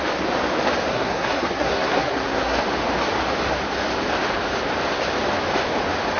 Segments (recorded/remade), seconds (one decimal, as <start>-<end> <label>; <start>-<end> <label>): 0.0-0.9 recorded; 0.9-2.6 remade; 2.6-6.2 recorded